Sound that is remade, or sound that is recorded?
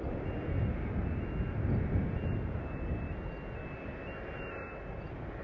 recorded